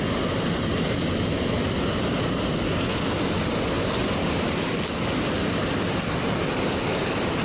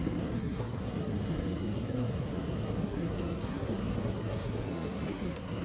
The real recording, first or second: first